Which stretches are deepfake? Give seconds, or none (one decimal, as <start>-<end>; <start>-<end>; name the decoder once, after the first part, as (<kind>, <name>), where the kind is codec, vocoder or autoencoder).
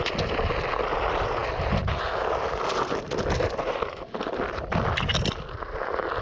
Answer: none